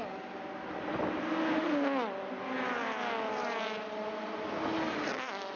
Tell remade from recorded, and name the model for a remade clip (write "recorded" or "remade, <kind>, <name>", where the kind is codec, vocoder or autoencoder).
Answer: recorded